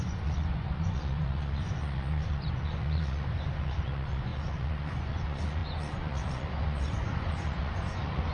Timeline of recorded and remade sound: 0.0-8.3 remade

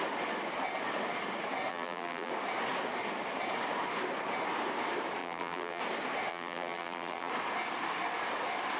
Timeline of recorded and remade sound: 0.0-1.7 recorded; 1.7-2.3 remade; 2.3-5.2 recorded; 5.2-5.8 remade; 5.8-6.3 recorded; 6.3-7.3 remade; 7.3-8.8 recorded

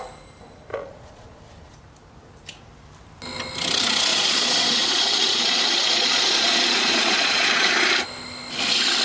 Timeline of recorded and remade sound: 0.0-0.7 recorded; 0.7-1.4 remade; 1.4-4.1 recorded; 4.1-7.7 remade; 7.7-9.0 recorded

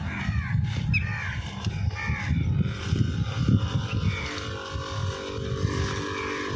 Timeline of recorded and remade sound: 0.0-6.6 recorded